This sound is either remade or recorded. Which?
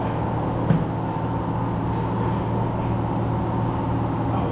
recorded